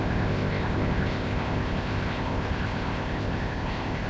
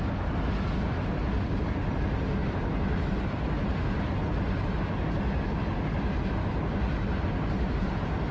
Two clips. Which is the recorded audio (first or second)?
second